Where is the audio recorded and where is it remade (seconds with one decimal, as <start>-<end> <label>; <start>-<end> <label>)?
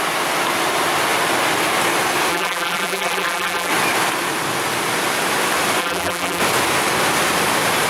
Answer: 0.0-2.3 recorded; 2.3-3.7 remade; 3.7-5.8 recorded; 5.8-6.4 remade; 6.4-7.9 recorded